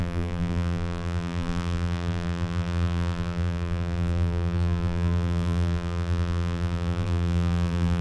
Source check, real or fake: fake